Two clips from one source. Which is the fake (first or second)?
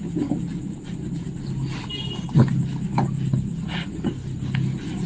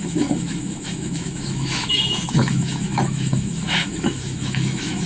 second